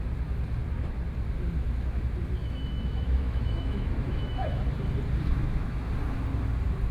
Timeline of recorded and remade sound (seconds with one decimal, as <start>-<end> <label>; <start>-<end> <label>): 0.0-2.4 recorded; 2.4-4.6 remade; 4.6-5.3 recorded; 5.3-5.9 remade; 5.9-6.9 recorded